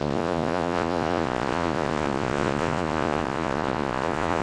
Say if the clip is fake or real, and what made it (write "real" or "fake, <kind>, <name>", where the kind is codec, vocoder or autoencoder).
fake, vocoder, Vocos